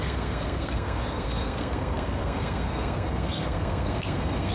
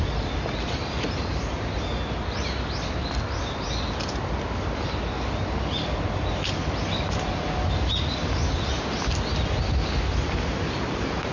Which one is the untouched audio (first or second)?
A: second